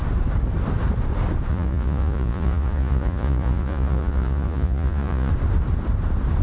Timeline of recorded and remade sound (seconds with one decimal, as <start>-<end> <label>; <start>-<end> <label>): 0.0-1.5 recorded; 1.5-5.3 remade; 5.3-6.4 recorded